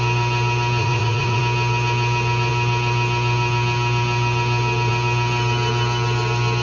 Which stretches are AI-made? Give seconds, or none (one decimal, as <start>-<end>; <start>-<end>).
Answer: 0.8-1.4